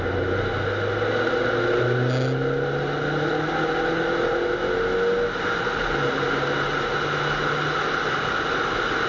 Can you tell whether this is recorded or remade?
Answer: recorded